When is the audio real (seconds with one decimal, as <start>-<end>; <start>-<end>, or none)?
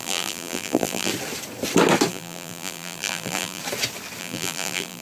1.1-2.1; 3.6-4.2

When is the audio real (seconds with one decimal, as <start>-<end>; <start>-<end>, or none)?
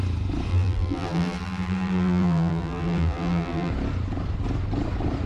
0.0-0.5; 3.7-5.3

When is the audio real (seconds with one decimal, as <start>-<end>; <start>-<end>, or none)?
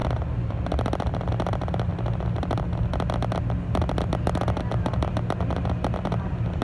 0.0-6.6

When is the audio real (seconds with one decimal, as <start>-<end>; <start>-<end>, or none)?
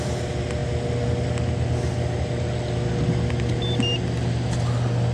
0.0-5.1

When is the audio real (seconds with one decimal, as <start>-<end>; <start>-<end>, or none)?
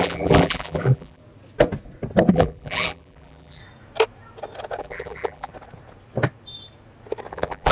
1.2-2.3; 3.6-4.8; 5.5-7.3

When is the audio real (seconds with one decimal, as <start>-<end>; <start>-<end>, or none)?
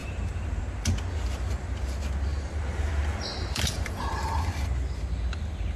0.6-2.3; 2.9-3.3; 3.9-5.8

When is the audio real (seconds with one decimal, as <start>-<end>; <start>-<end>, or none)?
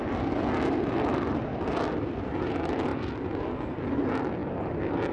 0.0-1.5; 2.5-2.9; 3.8-4.4